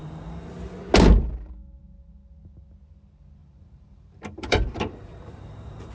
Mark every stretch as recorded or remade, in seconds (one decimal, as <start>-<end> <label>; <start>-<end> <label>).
0.0-3.4 recorded; 3.4-5.9 remade